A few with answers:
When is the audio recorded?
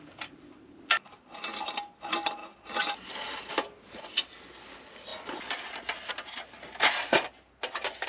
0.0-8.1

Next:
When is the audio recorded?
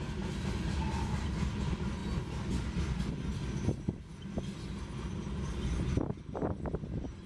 0.0-7.3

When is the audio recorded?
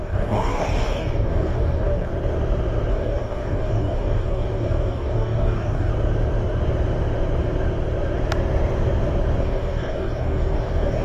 2.1-2.9; 5.9-9.4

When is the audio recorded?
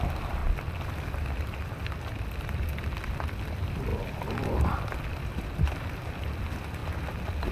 0.4-2.4; 6.8-7.5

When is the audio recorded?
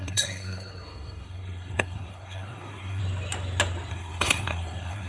3.0-3.9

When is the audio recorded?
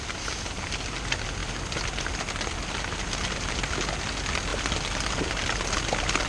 0.0-6.3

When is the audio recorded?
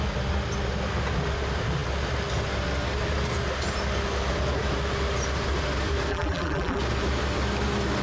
0.0-6.1; 6.8-8.0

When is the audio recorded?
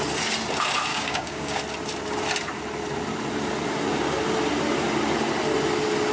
0.0-0.9; 1.6-6.1